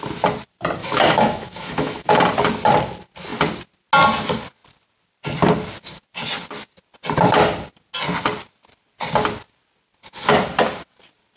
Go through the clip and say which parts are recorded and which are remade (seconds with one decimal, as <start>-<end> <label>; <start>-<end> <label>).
0.0-0.8 recorded; 0.8-2.1 remade; 2.1-11.4 recorded